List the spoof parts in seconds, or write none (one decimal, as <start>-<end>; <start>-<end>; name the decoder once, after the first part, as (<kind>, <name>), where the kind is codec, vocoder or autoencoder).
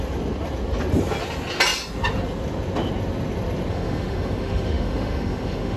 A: 3.7-5.8 (autoencoder, DAC-VAE)